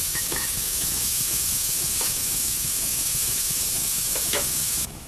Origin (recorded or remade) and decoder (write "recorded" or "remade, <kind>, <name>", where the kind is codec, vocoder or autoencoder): remade, autoencoder, DAC-VAE